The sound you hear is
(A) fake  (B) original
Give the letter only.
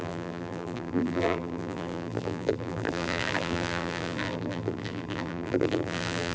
A